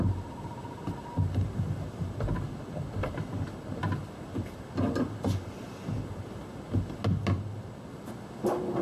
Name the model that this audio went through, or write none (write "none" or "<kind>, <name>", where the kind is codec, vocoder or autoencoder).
none